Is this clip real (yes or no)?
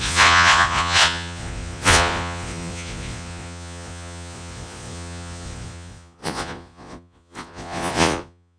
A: no